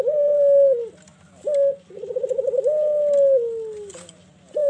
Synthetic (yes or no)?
no